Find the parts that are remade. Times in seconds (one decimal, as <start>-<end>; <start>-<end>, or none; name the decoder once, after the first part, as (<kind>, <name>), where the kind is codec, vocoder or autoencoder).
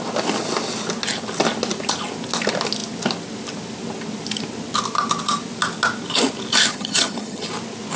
6.7-7.5 (vocoder, HiFi-GAN)